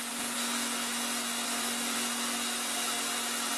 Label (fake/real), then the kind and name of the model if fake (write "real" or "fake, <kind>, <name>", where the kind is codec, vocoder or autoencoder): real